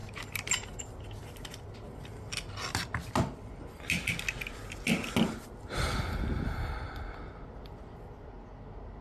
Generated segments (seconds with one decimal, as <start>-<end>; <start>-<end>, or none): none